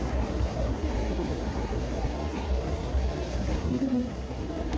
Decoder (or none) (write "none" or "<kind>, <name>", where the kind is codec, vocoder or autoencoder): codec, SNAC